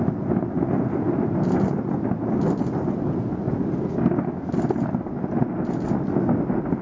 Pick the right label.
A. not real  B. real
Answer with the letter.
B